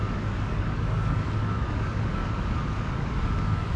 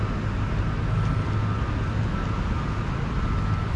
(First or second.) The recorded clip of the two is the second